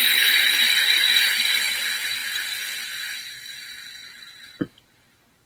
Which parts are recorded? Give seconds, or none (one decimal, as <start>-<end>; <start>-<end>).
0.0-5.5

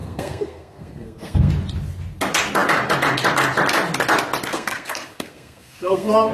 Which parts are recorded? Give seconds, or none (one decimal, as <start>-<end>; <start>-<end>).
1.5-4.5

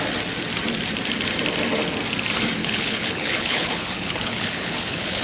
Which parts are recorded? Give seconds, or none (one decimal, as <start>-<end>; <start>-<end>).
0.0-2.6

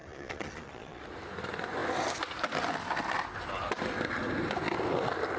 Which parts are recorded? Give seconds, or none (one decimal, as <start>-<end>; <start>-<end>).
1.0-5.4